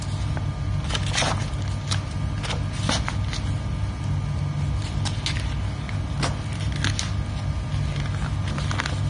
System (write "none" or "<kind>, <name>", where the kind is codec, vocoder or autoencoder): none